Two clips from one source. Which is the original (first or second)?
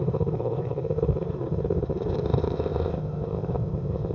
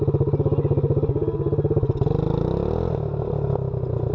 second